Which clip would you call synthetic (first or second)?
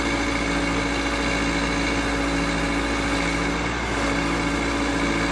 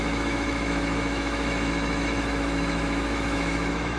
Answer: second